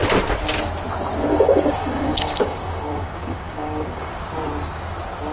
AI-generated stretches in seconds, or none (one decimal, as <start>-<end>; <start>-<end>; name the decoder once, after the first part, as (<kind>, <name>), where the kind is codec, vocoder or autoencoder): 1.3-4.1 (codec, DAC)